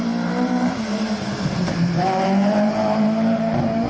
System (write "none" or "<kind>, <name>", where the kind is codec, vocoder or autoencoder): vocoder, BigVGAN v2